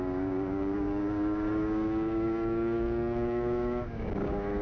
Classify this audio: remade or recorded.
remade